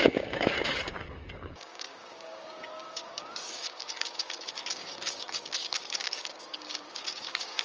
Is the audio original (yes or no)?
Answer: no